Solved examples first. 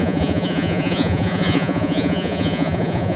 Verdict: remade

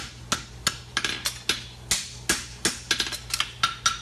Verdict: recorded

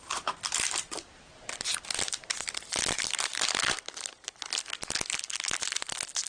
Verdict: recorded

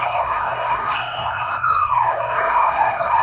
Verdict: remade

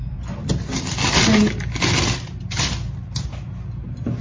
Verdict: recorded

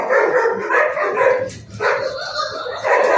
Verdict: recorded